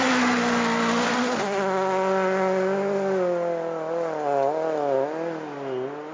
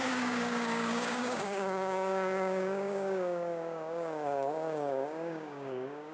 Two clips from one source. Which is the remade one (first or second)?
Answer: second